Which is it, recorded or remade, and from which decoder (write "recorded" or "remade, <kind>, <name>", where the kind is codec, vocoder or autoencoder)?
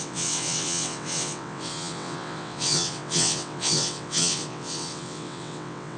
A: remade, vocoder, WaveNeXt